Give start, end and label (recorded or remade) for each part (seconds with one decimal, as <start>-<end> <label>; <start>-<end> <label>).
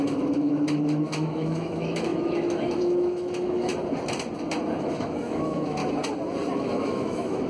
0.0-3.7 remade; 3.7-4.8 recorded; 4.8-5.8 remade; 5.8-6.6 recorded; 6.6-7.5 remade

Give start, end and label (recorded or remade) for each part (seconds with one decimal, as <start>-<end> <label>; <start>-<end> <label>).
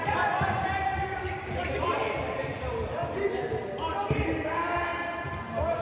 0.0-3.0 remade; 3.0-4.1 recorded; 4.1-5.8 remade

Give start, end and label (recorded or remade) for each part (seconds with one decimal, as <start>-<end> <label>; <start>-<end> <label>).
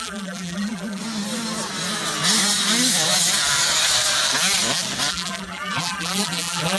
0.0-1.0 remade; 1.0-5.1 recorded; 5.1-6.8 remade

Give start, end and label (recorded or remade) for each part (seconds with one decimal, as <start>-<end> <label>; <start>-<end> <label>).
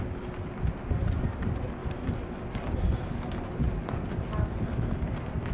0.0-5.5 recorded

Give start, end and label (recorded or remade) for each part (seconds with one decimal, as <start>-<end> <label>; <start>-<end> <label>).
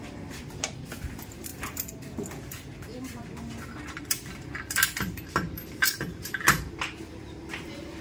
0.0-8.0 remade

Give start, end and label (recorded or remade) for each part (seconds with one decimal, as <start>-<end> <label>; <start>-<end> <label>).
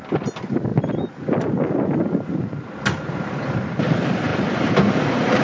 0.0-0.7 remade; 0.7-3.3 recorded; 3.3-5.4 remade